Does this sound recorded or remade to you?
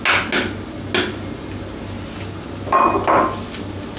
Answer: recorded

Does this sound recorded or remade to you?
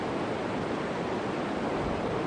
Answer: recorded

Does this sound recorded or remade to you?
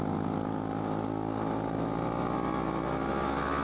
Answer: recorded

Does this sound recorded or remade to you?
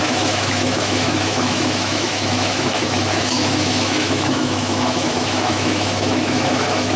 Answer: remade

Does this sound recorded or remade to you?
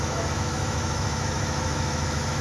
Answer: remade